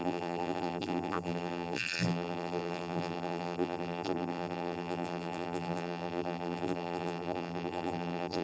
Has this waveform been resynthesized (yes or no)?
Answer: yes